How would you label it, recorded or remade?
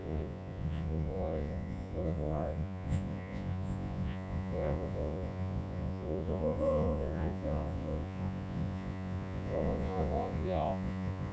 remade